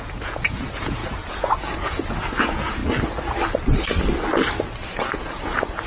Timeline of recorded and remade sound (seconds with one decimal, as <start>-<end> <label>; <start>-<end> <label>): 0.0-2.8 remade; 2.8-5.2 recorded; 5.2-5.9 remade